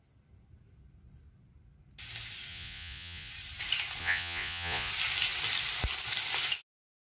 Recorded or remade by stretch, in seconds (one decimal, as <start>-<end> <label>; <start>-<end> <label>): 0.0-2.5 recorded; 2.5-3.3 remade; 3.3-4.0 recorded; 4.0-4.9 remade; 4.9-7.1 recorded